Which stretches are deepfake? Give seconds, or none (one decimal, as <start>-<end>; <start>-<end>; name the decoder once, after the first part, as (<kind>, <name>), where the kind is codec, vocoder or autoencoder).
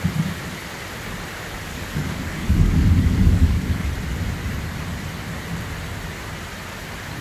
1.7-3.9 (codec, DAC)